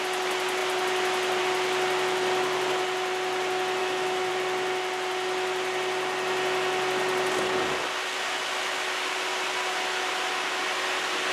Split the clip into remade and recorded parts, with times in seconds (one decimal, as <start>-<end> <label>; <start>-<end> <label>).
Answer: 0.0-3.8 recorded; 3.8-4.3 remade; 4.3-11.3 recorded